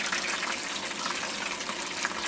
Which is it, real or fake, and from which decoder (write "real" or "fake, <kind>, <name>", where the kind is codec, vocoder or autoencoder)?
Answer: real